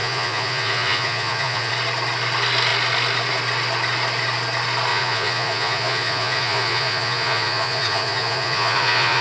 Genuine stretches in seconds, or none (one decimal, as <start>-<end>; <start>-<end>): 1.7-4.9